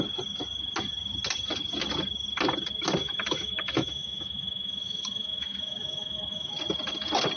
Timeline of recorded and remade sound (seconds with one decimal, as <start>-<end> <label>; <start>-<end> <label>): 0.0-3.0 recorded; 3.0-6.5 remade; 6.5-7.4 recorded

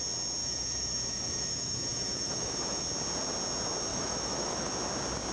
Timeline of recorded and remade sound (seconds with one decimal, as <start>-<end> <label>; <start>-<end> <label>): 0.0-0.4 recorded; 0.4-2.8 remade; 2.8-3.9 recorded; 3.9-4.7 remade; 4.7-5.3 recorded

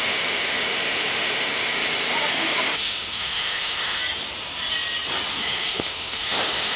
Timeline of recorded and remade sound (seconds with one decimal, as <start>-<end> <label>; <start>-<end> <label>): 0.0-1.7 remade; 1.7-2.3 recorded; 2.3-4.0 remade; 4.0-5.3 recorded; 5.3-6.8 remade

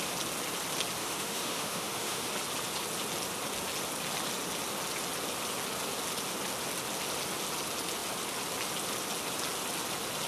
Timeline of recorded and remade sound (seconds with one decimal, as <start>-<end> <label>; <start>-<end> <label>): 0.0-1.0 recorded; 1.0-2.3 remade; 2.3-10.3 recorded

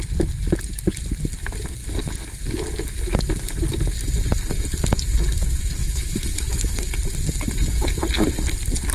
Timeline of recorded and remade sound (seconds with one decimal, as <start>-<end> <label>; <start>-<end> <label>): 0.0-5.8 recorded; 5.8-6.9 remade; 6.9-8.9 recorded

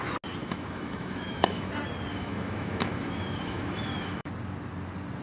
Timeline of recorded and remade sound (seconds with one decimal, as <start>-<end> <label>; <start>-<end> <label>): 0.0-0.4 recorded; 0.4-1.7 remade; 1.7-2.1 recorded; 2.1-4.3 remade; 4.3-5.2 recorded

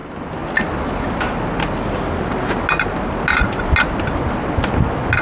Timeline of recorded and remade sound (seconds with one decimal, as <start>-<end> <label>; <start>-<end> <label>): 0.0-5.2 recorded

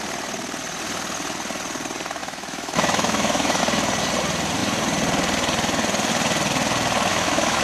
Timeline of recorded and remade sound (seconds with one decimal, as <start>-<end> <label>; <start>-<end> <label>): 0.0-2.2 recorded; 2.2-3.6 remade; 3.6-7.1 recorded; 7.1-7.6 remade